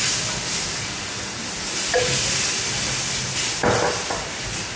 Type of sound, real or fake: real